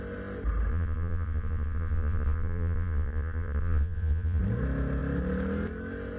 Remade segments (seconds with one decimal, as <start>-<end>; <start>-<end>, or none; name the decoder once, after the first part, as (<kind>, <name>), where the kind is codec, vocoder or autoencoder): 0.7-4.4 (vocoder, Vocos)

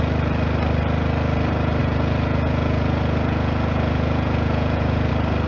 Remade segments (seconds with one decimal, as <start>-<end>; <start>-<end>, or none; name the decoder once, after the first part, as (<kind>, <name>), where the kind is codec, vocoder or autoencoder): 1.8-5.1 (vocoder, Vocos)

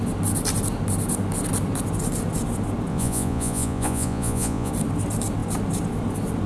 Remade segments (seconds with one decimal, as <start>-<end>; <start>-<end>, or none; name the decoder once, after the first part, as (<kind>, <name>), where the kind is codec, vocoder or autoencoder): 2.9-4.7 (vocoder, Vocos)

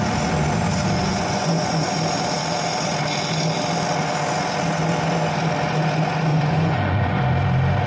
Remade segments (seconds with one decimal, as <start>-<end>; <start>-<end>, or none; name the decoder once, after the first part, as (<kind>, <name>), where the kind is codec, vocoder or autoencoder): 1.1-1.9 (vocoder, Vocos); 6.3-7.2